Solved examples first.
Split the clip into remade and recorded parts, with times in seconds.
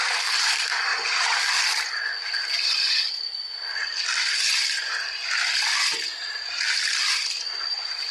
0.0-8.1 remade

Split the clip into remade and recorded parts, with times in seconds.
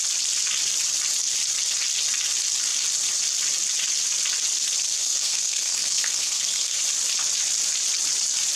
0.0-4.9 recorded; 4.9-6.8 remade; 6.8-8.6 recorded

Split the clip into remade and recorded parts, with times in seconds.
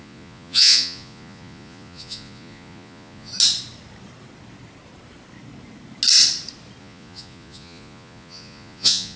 0.0-3.3 remade; 3.3-6.8 recorded; 6.8-9.2 remade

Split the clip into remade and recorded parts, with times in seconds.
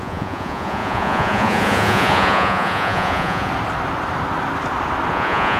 0.0-3.5 remade; 3.5-5.1 recorded; 5.1-5.6 remade